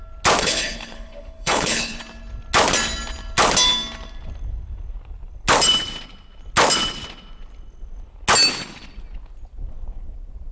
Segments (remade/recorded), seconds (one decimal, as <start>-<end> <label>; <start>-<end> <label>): 0.0-0.4 recorded; 0.4-2.0 remade; 2.0-10.5 recorded